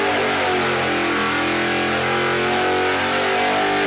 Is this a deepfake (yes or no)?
no